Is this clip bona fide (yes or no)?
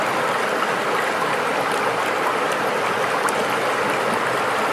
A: yes